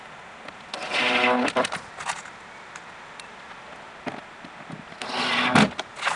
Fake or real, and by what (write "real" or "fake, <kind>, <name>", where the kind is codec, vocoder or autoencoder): real